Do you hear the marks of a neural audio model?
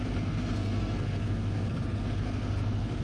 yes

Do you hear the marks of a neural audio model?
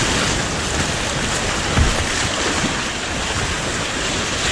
no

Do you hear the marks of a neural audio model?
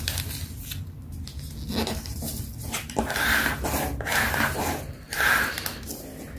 no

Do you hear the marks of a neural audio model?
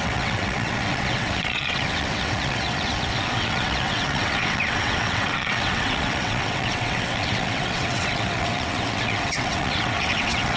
yes